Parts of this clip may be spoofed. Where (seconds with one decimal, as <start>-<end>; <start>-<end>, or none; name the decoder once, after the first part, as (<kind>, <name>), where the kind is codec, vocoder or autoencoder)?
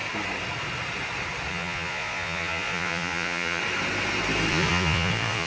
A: 1.5-3.6 (vocoder, Vocos); 4.5-5.5